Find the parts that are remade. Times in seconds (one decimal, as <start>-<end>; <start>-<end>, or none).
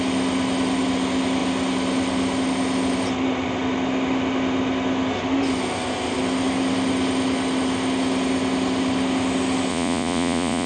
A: 9.7-10.7